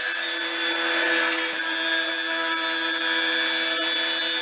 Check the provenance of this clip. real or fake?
real